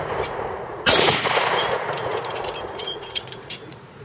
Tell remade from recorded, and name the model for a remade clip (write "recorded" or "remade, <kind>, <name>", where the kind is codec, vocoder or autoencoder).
remade, vocoder, Vocos